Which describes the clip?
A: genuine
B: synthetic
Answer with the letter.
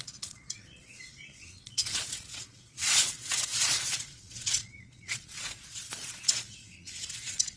B